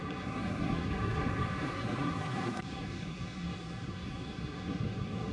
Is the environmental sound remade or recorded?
remade